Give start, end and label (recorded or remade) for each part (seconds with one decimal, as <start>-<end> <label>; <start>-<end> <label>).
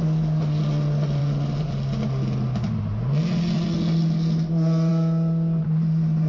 0.0-6.3 recorded